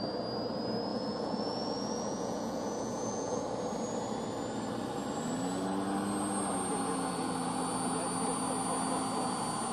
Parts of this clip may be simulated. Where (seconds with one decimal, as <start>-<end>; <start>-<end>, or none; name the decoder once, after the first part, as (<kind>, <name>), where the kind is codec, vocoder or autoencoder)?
0.9-3.4 (vocoder, Vocos)